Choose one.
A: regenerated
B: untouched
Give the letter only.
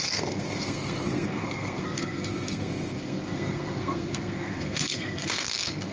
A